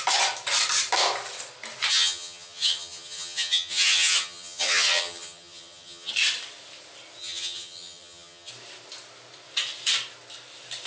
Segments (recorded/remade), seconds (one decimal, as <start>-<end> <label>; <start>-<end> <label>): 0.0-1.9 recorded; 1.9-6.1 remade; 6.1-7.2 recorded; 7.2-8.5 remade; 8.5-10.9 recorded